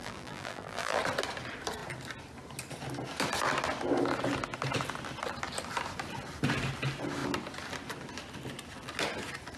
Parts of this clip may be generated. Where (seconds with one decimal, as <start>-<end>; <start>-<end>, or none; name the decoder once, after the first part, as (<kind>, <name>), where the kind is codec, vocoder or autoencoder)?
0.0-1.0 (vocoder, BigVGAN v2)